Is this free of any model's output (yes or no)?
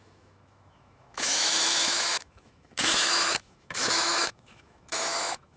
no